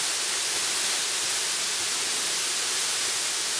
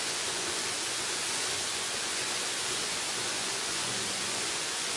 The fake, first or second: second